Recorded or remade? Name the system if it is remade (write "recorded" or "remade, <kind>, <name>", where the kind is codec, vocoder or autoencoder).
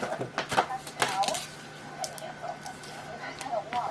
recorded